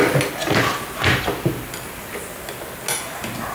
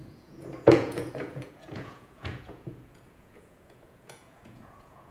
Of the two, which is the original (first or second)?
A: first